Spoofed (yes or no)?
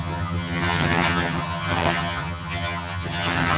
yes